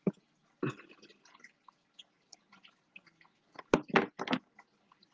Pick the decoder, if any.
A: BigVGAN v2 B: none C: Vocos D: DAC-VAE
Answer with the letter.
B